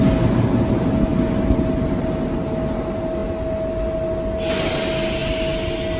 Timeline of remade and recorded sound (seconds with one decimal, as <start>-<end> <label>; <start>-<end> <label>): 0.0-6.0 recorded